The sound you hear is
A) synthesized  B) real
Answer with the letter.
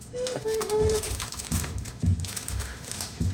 A